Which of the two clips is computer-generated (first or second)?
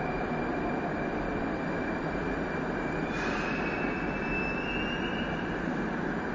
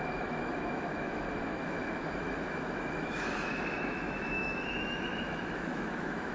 second